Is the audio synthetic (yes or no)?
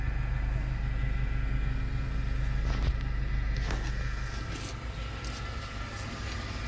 no